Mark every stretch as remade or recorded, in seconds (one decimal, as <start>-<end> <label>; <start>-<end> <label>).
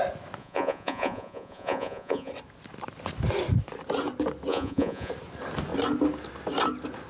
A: 0.0-0.4 recorded; 0.4-2.3 remade; 2.3-4.5 recorded; 4.5-5.1 remade; 5.1-7.1 recorded